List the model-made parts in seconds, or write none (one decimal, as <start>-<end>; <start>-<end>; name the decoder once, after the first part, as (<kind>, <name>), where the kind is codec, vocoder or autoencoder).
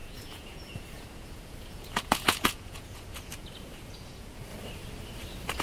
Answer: 0.0-4.5 (vocoder, Vocos)